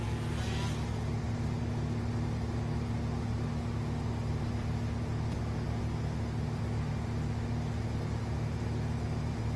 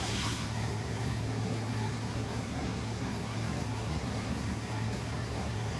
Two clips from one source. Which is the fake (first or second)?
second